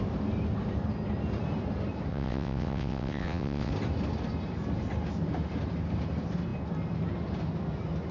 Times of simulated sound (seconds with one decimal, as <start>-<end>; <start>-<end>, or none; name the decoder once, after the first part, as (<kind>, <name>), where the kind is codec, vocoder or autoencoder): 2.1-3.7 (vocoder, WaveNeXt)